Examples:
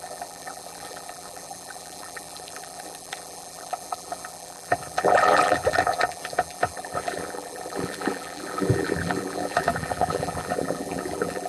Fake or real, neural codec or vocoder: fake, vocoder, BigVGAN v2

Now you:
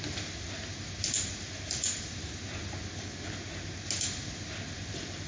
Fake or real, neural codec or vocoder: real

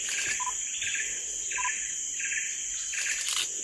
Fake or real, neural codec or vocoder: real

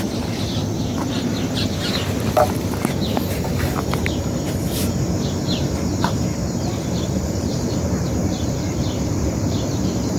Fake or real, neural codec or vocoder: fake, vocoder, BigVGAN v2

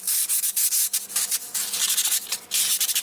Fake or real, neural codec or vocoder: real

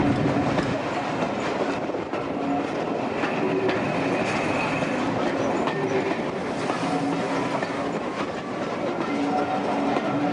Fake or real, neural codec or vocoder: real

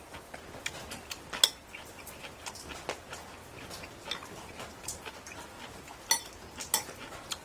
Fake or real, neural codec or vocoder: real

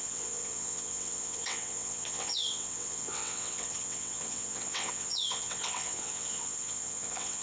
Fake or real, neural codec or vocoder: fake, vocoder, WaveNeXt